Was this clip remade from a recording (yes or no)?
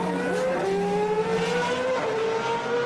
no